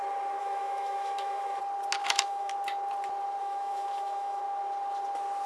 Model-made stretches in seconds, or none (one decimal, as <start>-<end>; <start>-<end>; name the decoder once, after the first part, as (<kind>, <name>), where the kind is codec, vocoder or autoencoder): 0.4-1.6 (autoencoder, DAC-VAE); 2.0-2.5; 3.4-4.4